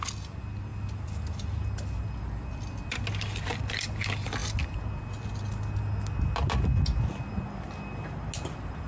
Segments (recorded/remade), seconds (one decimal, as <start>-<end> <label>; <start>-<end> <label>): 0.0-8.9 recorded